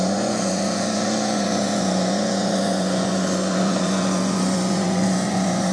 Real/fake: fake